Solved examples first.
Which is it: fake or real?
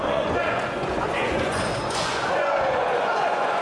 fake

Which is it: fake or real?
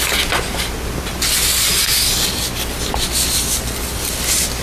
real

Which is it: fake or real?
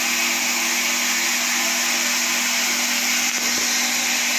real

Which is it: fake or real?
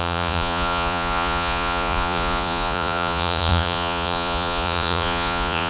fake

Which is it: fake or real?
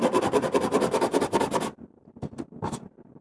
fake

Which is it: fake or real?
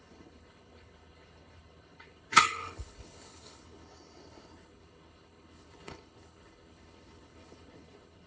fake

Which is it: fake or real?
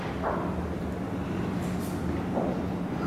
fake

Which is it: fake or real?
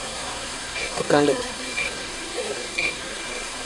fake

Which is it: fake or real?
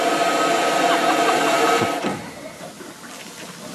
real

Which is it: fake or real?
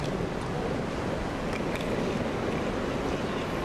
real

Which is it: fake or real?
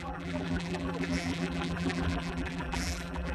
fake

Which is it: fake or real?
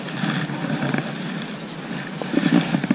real